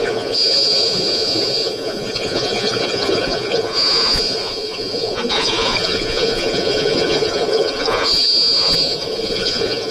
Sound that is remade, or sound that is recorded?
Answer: remade